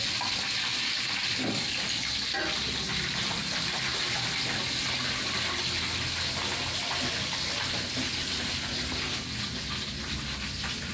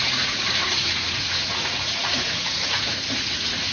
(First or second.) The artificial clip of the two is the second